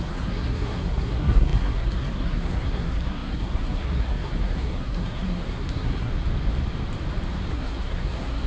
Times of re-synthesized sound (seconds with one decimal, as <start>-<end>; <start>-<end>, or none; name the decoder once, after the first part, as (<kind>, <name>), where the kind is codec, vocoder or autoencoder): 0.0-6.1 (codec, SNAC); 7.5-8.5